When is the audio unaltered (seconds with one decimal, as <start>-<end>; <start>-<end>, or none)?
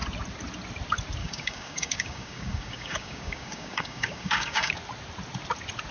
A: 0.0-1.2; 4.7-5.9